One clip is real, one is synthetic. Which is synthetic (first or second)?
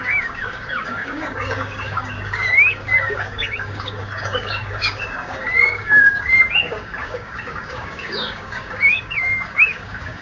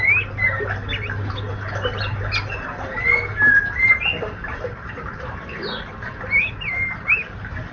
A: first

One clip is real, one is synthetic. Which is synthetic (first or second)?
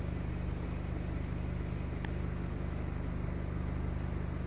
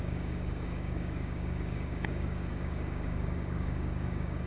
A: second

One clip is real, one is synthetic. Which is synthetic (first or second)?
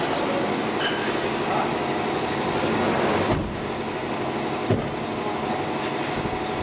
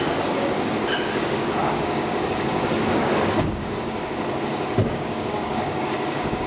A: second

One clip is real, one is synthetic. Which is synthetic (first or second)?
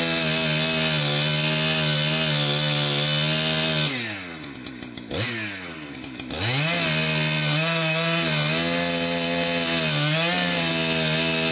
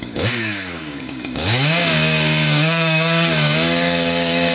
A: second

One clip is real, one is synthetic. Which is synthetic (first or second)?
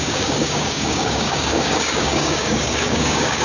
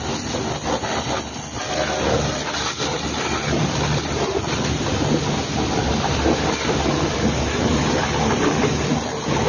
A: first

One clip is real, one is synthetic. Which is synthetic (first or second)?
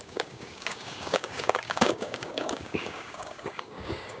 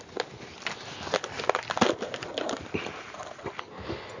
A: first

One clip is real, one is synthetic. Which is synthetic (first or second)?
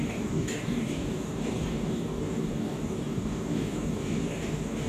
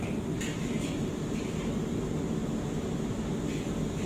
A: first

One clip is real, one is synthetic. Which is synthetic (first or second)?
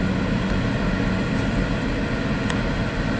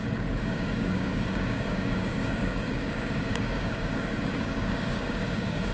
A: second